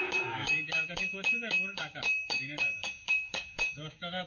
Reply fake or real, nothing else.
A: fake